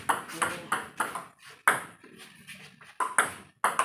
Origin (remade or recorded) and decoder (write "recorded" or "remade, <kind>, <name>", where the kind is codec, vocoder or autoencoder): recorded